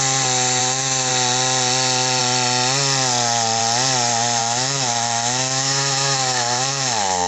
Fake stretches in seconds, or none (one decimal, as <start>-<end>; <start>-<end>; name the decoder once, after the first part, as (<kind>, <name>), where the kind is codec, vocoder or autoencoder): 0.6-1.1 (autoencoder, DAC-VAE); 4.4-7.3